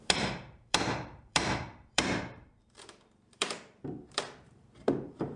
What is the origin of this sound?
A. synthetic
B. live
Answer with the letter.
A